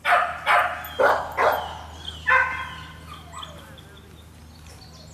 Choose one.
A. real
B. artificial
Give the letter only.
A